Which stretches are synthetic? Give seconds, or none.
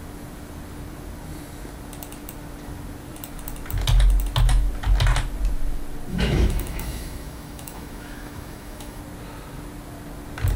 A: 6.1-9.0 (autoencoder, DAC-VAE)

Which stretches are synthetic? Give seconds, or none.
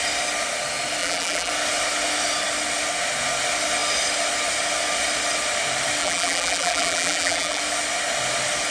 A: 1.0-1.5 (vocoder, BigVGAN v2); 6.0-7.6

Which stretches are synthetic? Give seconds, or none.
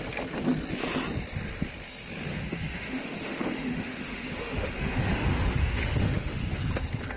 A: 2.3-6.6 (autoencoder, DAC-VAE)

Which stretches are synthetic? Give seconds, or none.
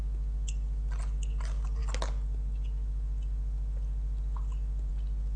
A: none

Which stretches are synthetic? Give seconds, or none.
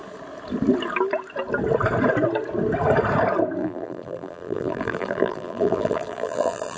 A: 3.6-6.8 (vocoder, BigVGAN v2)